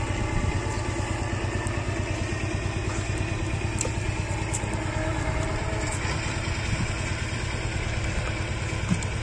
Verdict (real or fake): real